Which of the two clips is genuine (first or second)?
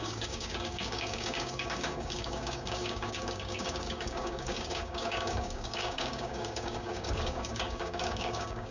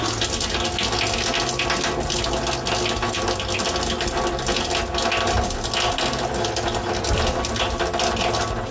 second